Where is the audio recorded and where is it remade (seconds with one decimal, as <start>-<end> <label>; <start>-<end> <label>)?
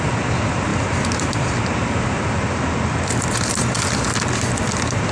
0.0-5.1 recorded